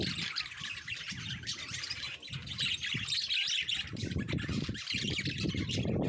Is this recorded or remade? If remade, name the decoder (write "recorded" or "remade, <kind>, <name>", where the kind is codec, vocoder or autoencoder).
recorded